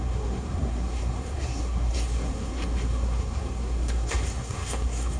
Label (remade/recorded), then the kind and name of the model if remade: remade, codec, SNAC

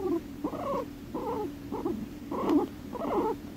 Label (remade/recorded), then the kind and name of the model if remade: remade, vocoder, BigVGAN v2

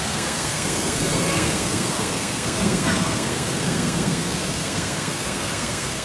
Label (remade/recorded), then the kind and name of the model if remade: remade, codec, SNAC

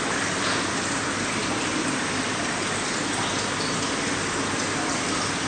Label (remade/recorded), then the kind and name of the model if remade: recorded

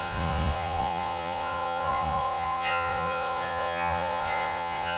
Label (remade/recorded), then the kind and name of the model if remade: remade, vocoder, Vocos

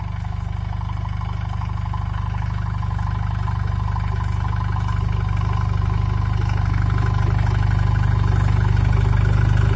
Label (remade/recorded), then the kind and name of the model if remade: recorded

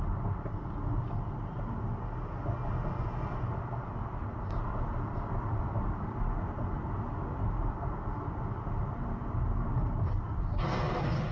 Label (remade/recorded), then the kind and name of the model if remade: recorded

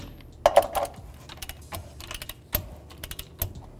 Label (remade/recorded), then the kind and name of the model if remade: recorded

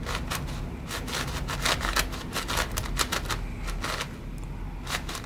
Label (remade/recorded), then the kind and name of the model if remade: recorded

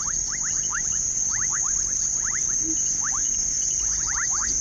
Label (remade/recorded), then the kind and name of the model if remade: recorded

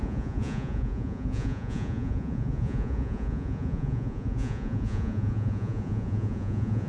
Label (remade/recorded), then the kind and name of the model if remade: remade, vocoder, Vocos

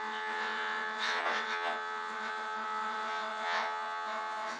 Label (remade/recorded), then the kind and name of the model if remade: remade, vocoder, WaveNeXt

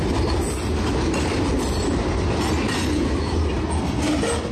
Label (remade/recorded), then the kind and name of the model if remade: recorded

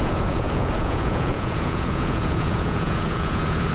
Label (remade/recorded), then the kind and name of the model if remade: remade, vocoder, Vocos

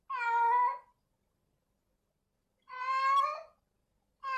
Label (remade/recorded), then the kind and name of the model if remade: recorded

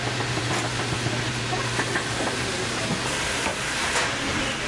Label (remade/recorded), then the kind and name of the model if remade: recorded